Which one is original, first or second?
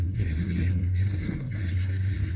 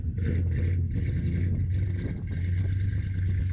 second